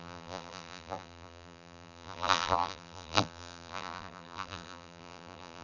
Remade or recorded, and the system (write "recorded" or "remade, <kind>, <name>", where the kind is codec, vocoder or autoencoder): remade, vocoder, BigVGAN v2